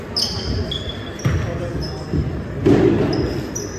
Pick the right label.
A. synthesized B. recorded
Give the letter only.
B